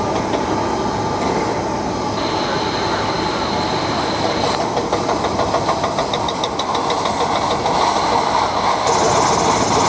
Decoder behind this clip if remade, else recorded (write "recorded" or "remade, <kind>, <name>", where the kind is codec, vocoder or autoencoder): recorded